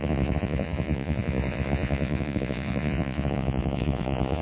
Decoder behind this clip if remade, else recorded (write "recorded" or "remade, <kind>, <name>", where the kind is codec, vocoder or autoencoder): remade, vocoder, Vocos